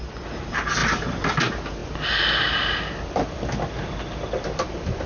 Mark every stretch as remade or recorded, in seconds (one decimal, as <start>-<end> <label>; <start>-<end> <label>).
0.0-5.1 recorded